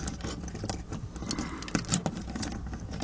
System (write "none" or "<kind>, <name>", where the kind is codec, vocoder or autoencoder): none